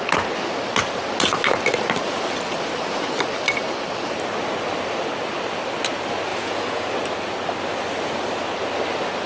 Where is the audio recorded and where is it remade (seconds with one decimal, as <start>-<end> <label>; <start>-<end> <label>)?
0.0-6.3 recorded; 6.3-6.9 remade; 6.9-9.3 recorded